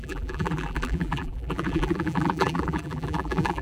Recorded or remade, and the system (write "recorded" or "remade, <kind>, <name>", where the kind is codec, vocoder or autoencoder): remade, vocoder, BigVGAN v2